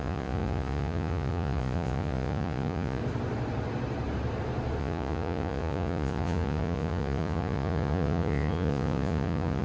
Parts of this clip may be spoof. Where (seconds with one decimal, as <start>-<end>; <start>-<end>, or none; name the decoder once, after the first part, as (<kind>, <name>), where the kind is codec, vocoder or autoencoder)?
0.0-3.0 (vocoder, Vocos); 4.8-9.6